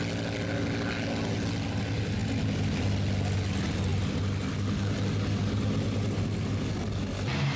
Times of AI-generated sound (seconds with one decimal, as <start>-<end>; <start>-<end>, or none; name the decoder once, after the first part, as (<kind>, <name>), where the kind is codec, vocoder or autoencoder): none